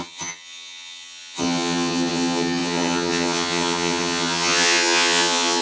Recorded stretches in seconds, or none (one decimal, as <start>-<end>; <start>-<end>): none